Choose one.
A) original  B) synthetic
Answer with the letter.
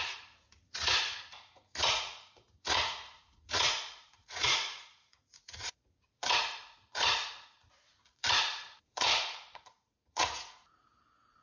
B